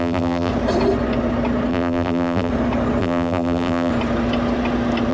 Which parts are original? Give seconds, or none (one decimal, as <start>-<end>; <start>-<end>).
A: 0.5-1.7; 2.5-3.0; 3.9-5.1